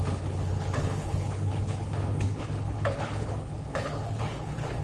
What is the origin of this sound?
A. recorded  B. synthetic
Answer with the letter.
B